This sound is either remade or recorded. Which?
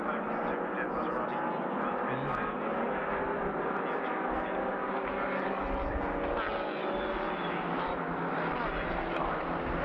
recorded